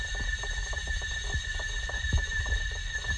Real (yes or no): no